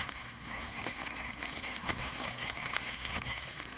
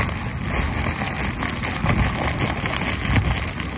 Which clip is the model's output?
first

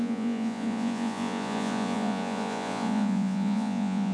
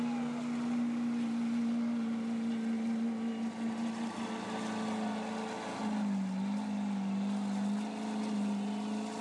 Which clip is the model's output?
first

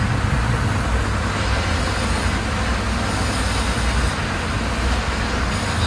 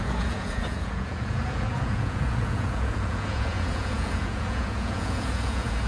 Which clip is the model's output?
second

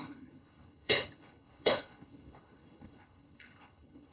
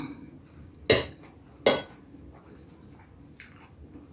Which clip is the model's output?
first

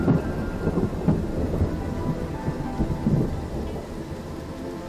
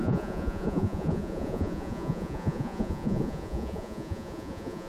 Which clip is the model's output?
second